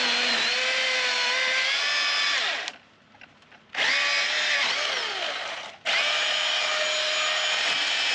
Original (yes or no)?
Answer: yes